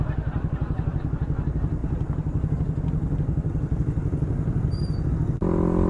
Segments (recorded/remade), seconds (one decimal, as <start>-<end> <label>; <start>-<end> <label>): 0.0-5.9 recorded

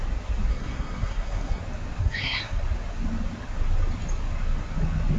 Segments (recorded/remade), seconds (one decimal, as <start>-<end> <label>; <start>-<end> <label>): 0.0-0.5 recorded; 0.5-1.6 remade; 1.6-2.0 recorded; 2.0-2.6 remade; 2.6-5.2 recorded

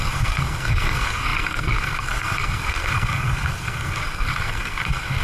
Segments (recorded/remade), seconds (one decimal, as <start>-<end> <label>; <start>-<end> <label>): 0.0-5.2 remade

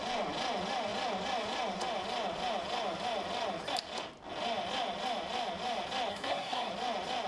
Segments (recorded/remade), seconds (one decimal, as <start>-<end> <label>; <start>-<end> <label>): 0.0-6.1 recorded; 6.1-6.7 remade; 6.7-7.3 recorded

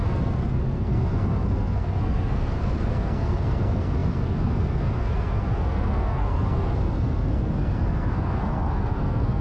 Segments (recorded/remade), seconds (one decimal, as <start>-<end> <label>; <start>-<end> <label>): 0.0-9.4 remade